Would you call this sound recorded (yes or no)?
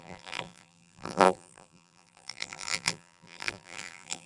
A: no